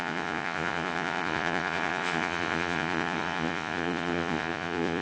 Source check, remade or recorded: remade